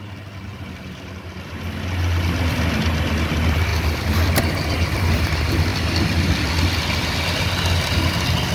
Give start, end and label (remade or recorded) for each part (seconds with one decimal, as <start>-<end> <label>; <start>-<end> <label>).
0.0-8.5 recorded